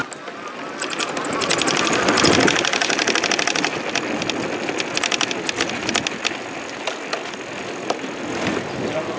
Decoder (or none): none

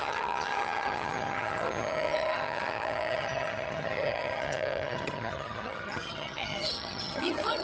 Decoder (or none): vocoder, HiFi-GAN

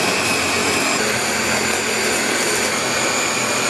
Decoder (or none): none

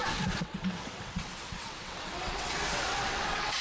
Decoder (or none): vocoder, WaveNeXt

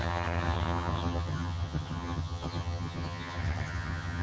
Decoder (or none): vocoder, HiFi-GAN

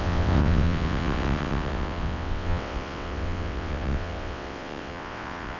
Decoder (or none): vocoder, WaveNeXt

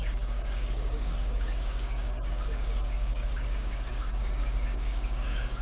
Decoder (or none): codec, DAC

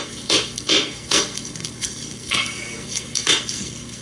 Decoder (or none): codec, SNAC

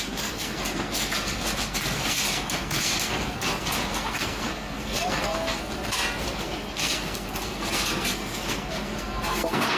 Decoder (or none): codec, SNAC